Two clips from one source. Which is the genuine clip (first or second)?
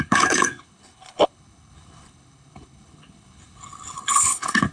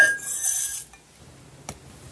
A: second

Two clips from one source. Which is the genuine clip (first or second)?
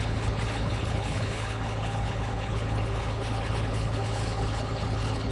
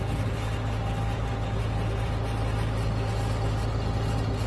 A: second